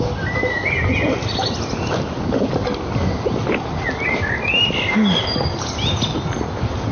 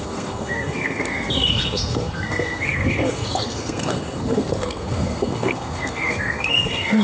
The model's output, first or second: second